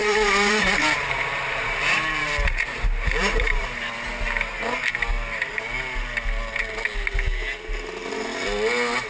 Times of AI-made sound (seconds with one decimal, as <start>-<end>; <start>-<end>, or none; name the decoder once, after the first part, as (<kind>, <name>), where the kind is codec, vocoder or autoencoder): 0.0-3.9 (vocoder, BigVGAN v2)